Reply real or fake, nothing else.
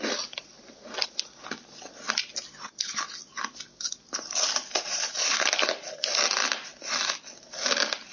real